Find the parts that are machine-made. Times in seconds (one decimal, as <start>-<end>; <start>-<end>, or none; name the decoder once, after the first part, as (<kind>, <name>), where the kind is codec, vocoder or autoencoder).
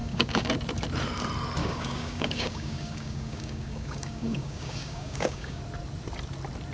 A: 0.0-0.5 (codec, DAC); 1.6-5.6